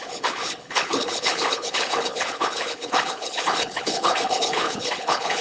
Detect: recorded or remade remade